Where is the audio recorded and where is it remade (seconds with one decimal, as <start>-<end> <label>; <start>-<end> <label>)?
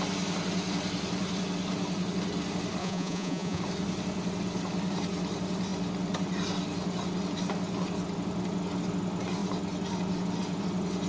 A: 0.0-2.8 recorded; 2.8-3.6 remade; 3.6-11.1 recorded